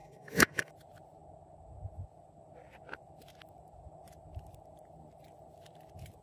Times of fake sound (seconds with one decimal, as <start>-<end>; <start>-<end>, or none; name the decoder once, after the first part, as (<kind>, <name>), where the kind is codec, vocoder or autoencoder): 0.0-0.7 (codec, SNAC)